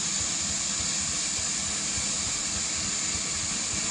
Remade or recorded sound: recorded